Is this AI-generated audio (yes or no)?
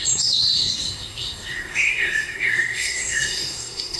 yes